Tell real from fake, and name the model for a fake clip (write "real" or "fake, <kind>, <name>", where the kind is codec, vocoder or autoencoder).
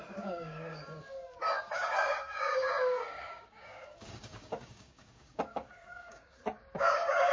fake, codec, DAC